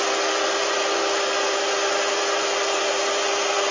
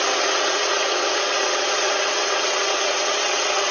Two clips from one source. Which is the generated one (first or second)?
second